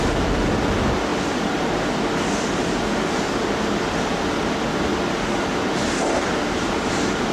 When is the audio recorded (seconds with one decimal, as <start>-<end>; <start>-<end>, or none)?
0.0-7.3